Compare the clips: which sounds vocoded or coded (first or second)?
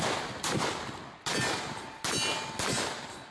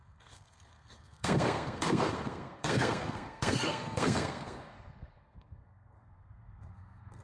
second